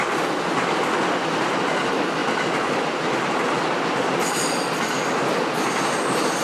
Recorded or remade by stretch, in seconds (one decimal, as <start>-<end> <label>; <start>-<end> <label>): 0.0-6.4 recorded